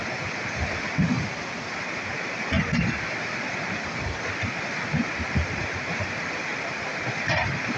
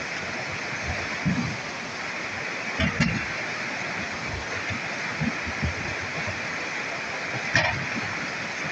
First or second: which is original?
second